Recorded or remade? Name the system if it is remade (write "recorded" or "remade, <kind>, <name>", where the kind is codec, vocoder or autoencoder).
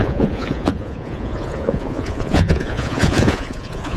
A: remade, vocoder, Vocos